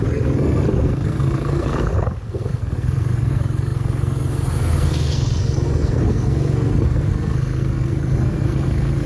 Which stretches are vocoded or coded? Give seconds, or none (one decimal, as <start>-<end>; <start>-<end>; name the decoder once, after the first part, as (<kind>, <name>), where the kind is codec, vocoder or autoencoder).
0.0-9.1 (codec, SNAC)